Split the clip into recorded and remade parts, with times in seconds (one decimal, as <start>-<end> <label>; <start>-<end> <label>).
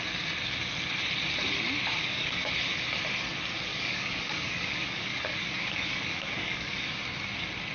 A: 0.0-1.9 recorded; 1.9-2.5 remade; 2.5-3.7 recorded; 3.7-7.0 remade; 7.0-7.7 recorded